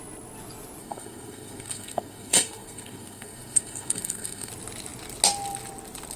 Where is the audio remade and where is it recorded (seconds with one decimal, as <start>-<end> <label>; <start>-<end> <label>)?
0.0-0.8 recorded; 0.8-4.5 remade; 4.5-6.2 recorded